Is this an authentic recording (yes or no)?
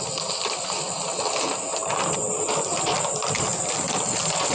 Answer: yes